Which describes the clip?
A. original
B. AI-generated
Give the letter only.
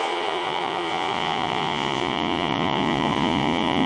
B